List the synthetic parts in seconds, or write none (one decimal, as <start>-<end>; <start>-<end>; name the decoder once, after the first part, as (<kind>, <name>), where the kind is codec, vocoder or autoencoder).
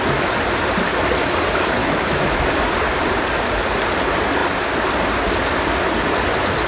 1.8-2.5 (autoencoder, DAC-VAE)